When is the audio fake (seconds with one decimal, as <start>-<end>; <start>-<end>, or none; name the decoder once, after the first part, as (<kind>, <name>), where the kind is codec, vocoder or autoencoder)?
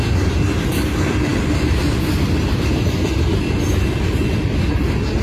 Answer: none